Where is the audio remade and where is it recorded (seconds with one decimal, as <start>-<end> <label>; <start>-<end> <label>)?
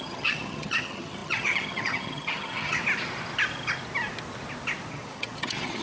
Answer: 0.0-2.8 remade; 2.8-4.9 recorded; 4.9-5.8 remade